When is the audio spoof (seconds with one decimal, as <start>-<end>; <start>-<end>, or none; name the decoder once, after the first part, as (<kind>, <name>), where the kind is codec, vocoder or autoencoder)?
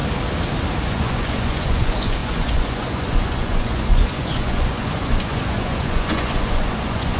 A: 0.8-7.2 (vocoder, Vocos)